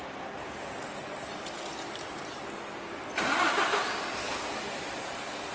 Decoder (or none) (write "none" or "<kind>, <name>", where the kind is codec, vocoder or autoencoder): none